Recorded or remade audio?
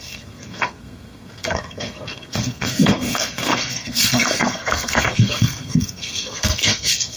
remade